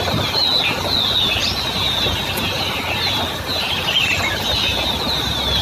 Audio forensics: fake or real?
real